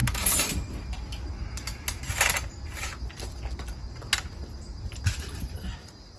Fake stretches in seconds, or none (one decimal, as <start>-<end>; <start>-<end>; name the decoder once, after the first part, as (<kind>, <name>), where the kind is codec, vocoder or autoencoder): none